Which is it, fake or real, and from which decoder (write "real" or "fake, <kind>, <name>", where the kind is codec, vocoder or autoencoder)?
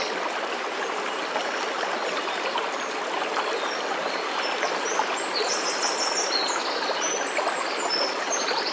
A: real